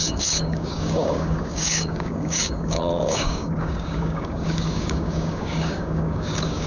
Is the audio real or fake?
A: fake